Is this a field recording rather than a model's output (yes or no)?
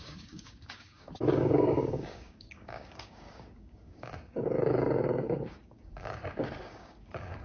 no